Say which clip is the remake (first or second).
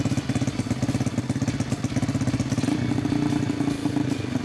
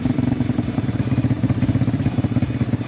second